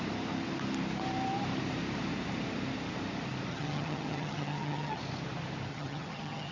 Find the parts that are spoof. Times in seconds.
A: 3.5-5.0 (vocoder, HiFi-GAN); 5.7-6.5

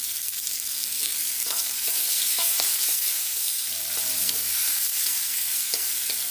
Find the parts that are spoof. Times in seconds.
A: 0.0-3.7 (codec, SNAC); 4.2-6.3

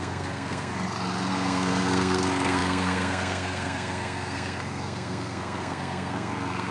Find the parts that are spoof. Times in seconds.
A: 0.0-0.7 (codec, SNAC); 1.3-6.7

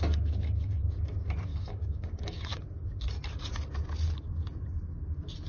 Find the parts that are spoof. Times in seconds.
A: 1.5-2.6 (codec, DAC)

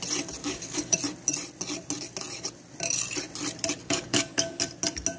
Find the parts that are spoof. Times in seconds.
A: 0.4-1.0 (codec, DAC); 3.8-4.6

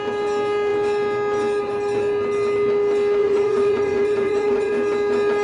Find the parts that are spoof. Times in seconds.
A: 3.2-4.7 (vocoder, Vocos)

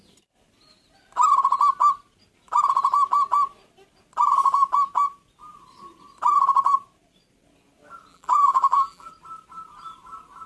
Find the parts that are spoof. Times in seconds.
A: 8.1-9.1 (vocoder, BigVGAN v2)

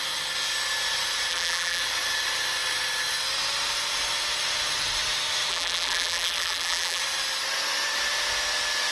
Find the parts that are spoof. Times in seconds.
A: 1.3-1.8 (vocoder, BigVGAN v2); 5.5-7.0